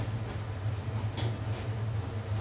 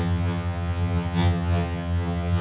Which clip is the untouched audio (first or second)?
first